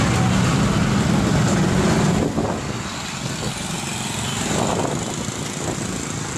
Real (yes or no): yes